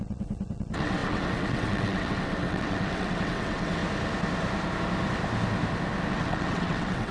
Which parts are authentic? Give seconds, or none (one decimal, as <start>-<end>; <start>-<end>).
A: 3.8-6.1

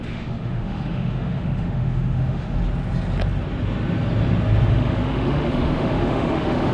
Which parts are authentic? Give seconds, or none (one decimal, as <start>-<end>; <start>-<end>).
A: 2.6-4.7

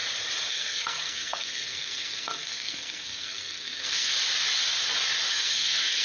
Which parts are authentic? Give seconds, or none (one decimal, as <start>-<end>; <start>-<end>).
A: 0.0-0.5; 4.1-5.3

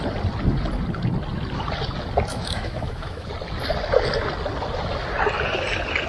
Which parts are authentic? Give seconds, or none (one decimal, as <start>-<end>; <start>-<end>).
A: 0.0-2.3; 3.3-6.1

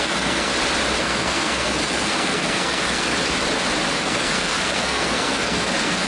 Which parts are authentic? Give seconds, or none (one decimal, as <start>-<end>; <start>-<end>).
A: 0.5-1.0; 3.1-3.9